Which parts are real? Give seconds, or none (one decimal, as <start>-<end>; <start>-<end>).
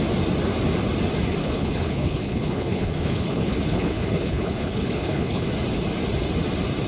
0.0-1.4; 5.5-6.9